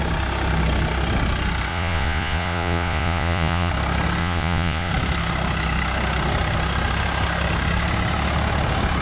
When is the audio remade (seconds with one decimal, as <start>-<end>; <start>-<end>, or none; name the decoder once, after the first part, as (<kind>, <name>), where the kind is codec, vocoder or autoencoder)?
1.7-3.7 (vocoder, Vocos); 4.2-4.9